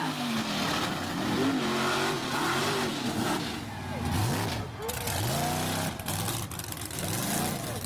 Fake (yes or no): no